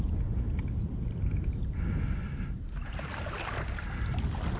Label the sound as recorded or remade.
recorded